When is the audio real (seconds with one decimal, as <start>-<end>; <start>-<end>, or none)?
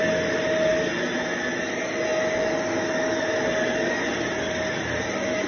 0.0-5.5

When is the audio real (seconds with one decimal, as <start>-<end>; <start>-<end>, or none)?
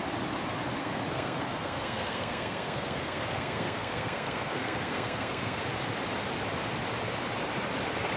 0.0-0.8; 5.6-8.2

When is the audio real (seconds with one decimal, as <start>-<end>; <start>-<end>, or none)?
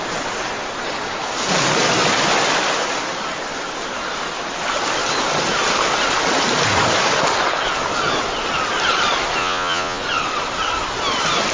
0.0-9.4; 10.0-11.5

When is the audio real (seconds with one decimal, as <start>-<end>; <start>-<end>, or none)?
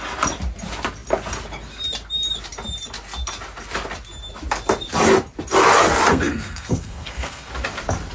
0.0-6.1; 7.5-8.1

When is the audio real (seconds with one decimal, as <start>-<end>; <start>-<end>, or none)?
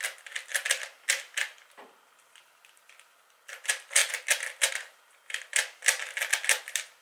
4.0-4.7; 6.0-6.6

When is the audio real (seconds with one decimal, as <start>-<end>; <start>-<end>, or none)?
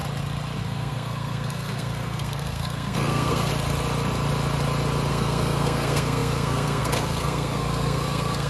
0.0-0.6; 3.5-5.1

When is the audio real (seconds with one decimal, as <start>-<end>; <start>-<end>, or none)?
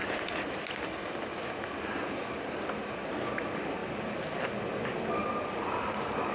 0.0-6.3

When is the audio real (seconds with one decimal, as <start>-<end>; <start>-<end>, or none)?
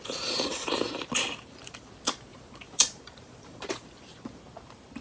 0.0-0.5; 1.9-2.3; 4.4-5.0